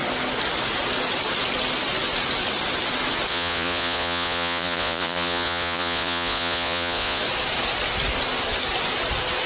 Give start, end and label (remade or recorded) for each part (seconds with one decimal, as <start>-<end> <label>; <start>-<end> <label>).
0.0-3.3 recorded; 3.3-7.2 remade; 7.2-9.5 recorded